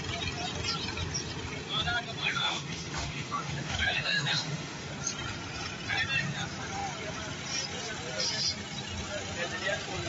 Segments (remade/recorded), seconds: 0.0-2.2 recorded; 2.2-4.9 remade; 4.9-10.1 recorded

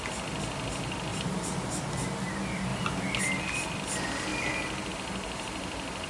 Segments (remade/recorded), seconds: 0.0-1.1 recorded; 1.1-1.7 remade; 1.7-6.1 recorded

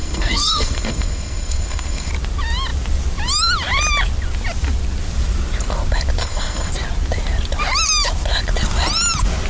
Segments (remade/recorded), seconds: 0.0-2.1 remade; 2.1-6.2 recorded; 6.2-6.7 remade; 6.7-9.5 recorded

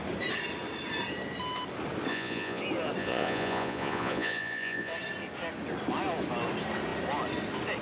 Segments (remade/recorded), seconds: 0.0-2.1 recorded; 2.1-2.6 remade; 2.6-3.0 recorded; 3.0-4.9 remade; 4.9-7.8 recorded

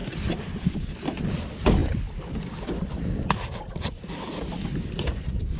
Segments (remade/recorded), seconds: 0.0-0.8 remade; 0.8-1.8 recorded; 1.8-3.2 remade; 3.2-5.6 recorded

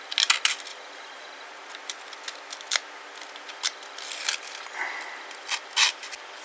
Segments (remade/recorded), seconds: 0.0-0.7 recorded; 0.7-1.7 remade; 1.7-6.4 recorded

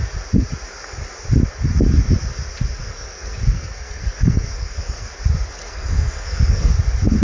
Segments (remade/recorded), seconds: 0.0-2.8 recorded; 2.8-5.1 remade; 5.1-5.6 recorded; 5.6-6.7 remade; 6.7-7.2 recorded

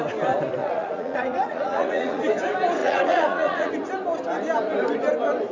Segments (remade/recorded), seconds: 0.0-0.6 recorded; 0.6-2.2 remade; 2.2-2.8 recorded; 2.8-3.7 remade; 3.7-5.5 recorded